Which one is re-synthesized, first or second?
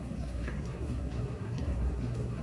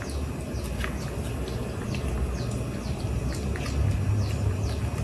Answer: first